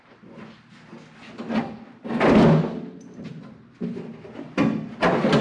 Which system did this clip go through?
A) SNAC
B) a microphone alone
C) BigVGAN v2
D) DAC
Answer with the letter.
B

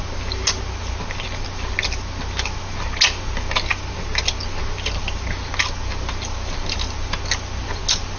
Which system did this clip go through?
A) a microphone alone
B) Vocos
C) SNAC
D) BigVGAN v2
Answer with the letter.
A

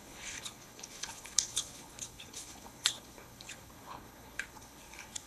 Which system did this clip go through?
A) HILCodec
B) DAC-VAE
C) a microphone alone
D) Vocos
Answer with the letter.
A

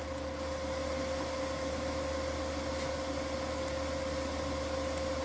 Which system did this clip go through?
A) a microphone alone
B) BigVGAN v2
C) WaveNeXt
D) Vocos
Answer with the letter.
A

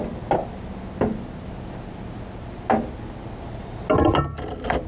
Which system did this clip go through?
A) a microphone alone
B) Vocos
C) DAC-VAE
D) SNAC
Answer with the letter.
A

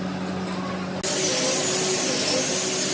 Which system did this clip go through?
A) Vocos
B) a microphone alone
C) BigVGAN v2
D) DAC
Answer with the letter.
B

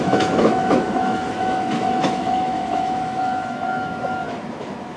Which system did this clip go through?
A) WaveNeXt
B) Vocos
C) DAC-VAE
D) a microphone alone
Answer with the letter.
C